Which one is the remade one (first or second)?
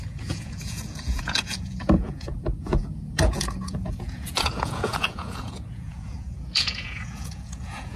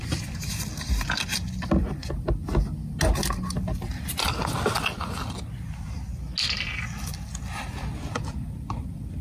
first